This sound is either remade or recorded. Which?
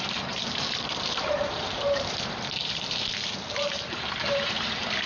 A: remade